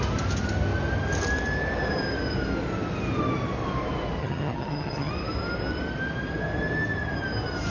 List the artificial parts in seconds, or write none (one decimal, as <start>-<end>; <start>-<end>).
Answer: 4.2-5.1